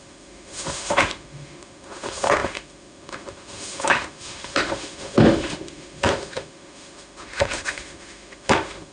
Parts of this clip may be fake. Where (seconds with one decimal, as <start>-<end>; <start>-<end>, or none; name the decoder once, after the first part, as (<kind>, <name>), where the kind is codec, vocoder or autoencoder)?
0.0-8.9 (autoencoder, DAC-VAE)